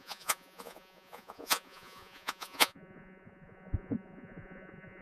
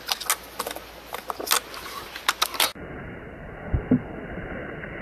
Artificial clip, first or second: first